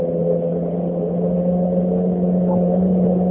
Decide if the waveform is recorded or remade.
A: recorded